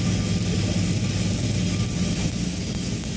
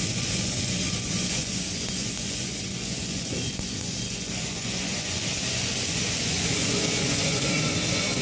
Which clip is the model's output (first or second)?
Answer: second